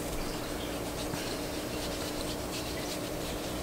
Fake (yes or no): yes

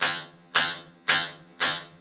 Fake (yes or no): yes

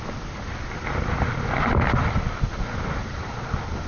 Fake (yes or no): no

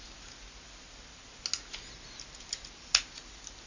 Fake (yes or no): no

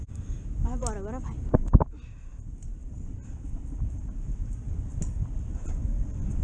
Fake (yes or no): no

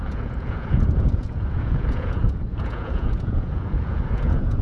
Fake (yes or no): yes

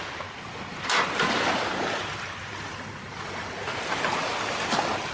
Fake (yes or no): no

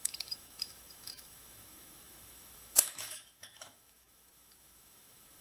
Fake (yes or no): yes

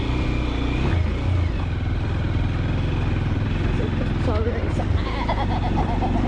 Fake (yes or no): no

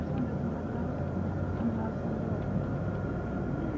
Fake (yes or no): no